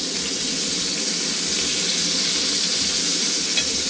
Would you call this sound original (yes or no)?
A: yes